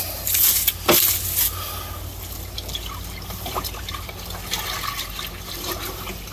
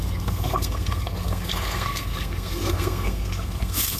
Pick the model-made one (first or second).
second